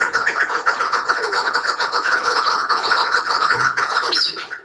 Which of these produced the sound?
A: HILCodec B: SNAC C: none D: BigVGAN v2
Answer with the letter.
A